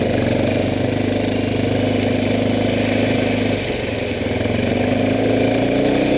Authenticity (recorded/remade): recorded